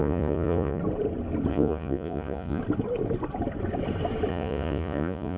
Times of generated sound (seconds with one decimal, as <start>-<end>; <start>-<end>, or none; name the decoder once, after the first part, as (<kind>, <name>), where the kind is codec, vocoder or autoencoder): 0.0-0.8 (vocoder, Vocos); 1.5-2.6; 4.3-5.4